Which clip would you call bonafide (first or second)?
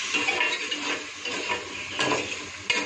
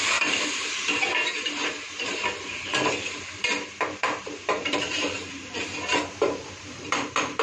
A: first